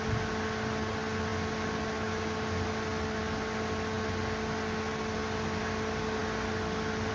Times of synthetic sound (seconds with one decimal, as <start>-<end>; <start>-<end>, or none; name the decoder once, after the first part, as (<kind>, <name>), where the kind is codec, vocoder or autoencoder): none